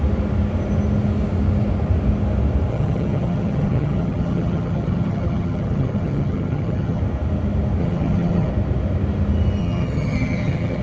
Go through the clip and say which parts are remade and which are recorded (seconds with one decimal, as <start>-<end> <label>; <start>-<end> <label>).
0.0-2.7 recorded; 2.7-7.0 remade; 7.0-7.8 recorded; 7.8-8.5 remade; 8.5-9.6 recorded; 9.6-10.8 remade